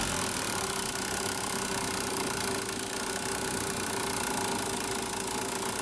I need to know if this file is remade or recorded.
recorded